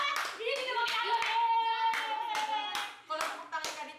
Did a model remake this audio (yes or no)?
no